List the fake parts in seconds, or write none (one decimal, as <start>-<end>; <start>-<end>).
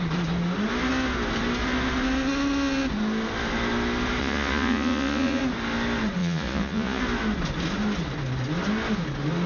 4.2-5.4; 6.2-7.0